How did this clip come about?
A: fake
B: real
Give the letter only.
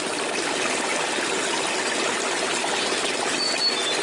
B